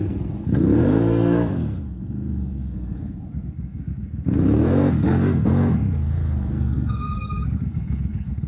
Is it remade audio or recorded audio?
remade